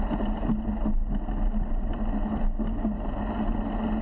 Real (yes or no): yes